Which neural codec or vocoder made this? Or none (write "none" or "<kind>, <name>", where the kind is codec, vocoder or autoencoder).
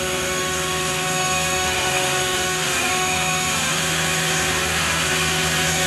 autoencoder, DAC-VAE